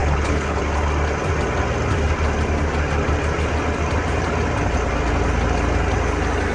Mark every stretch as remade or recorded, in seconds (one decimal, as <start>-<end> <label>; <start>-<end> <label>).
0.0-0.6 remade; 0.6-6.5 recorded